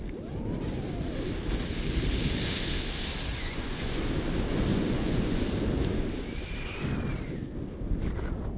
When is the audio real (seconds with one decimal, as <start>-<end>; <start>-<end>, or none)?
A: 0.0-3.3; 4.0-4.7; 5.4-8.6